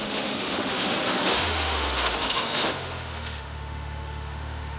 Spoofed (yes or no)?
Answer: yes